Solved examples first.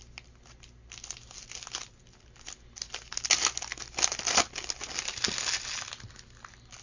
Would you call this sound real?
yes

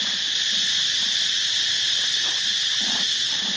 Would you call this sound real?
yes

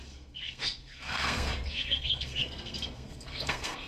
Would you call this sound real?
no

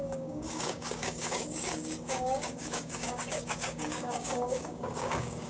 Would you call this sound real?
no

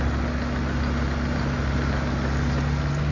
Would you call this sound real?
yes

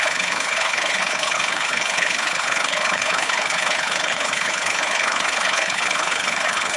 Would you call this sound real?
no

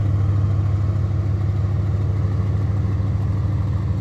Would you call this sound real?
yes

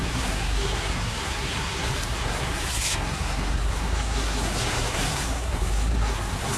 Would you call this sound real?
no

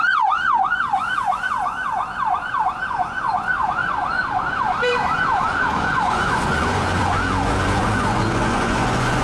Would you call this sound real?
no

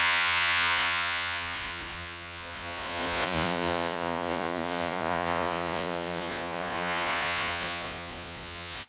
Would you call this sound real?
no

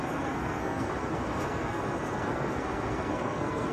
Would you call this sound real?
no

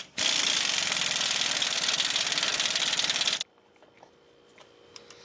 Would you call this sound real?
yes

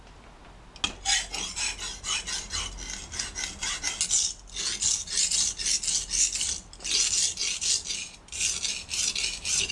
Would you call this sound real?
yes